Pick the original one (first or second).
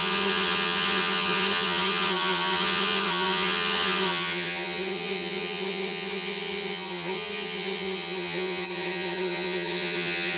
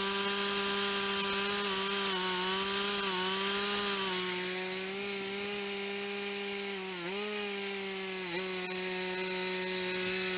second